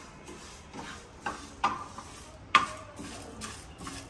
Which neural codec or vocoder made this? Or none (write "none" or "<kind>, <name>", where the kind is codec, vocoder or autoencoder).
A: none